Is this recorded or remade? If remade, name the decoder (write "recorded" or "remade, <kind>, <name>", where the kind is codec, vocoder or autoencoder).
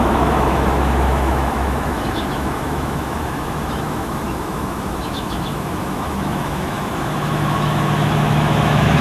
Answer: remade, autoencoder, DAC-VAE